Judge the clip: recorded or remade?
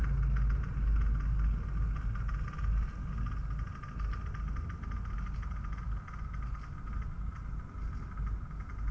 recorded